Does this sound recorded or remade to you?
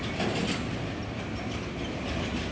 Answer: recorded